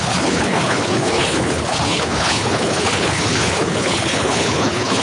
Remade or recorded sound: remade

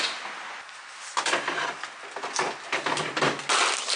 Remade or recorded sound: recorded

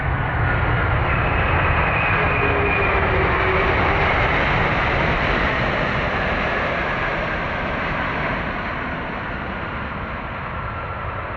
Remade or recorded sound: recorded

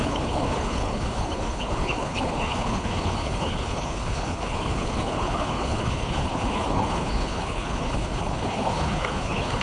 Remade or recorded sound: remade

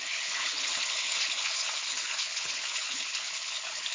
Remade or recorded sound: remade